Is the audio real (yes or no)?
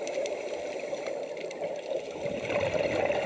yes